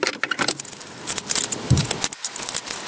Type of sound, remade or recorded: recorded